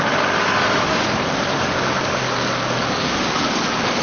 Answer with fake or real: fake